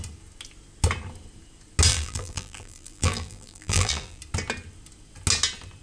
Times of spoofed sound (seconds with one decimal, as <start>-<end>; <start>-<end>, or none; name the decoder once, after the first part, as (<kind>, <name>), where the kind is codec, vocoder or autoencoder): 1.9-4.2 (vocoder, BigVGAN v2)